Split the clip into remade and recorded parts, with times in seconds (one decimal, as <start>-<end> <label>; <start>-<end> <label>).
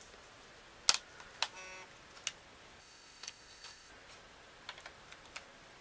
0.0-2.8 recorded; 2.8-3.9 remade; 3.9-5.8 recorded